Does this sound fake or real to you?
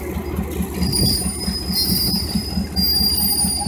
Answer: real